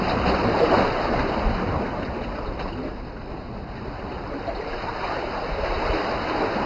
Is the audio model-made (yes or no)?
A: no